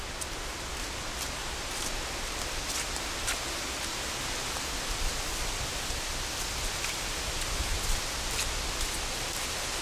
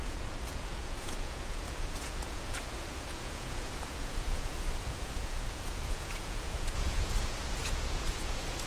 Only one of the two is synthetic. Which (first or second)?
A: second